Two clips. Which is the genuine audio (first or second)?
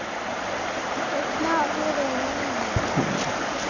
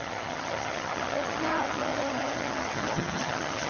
first